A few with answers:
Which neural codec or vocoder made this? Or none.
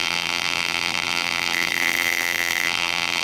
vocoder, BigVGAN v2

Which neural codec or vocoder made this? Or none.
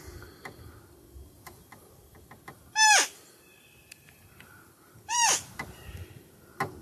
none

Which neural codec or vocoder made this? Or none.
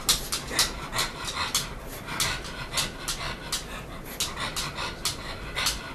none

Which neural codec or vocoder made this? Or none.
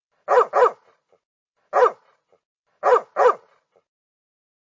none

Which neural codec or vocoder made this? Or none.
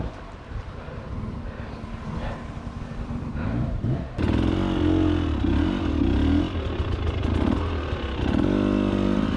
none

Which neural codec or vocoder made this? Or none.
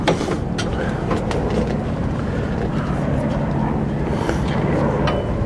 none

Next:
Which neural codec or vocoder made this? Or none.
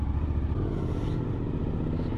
none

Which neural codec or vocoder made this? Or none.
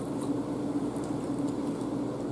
none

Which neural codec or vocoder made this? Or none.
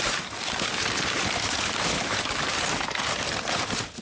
none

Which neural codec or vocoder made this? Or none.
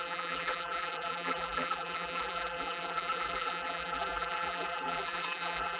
vocoder, BigVGAN v2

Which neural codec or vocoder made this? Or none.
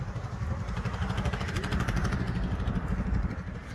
none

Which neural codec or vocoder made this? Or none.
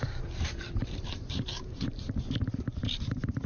vocoder, BigVGAN v2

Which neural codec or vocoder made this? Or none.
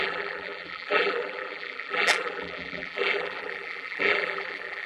vocoder, BigVGAN v2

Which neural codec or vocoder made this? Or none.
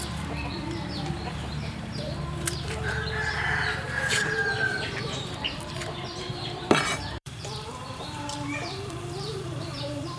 vocoder, BigVGAN v2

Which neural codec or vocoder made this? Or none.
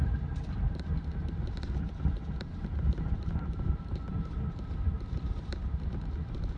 vocoder, BigVGAN v2